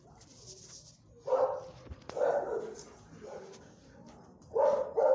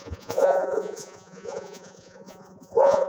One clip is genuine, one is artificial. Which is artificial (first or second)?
second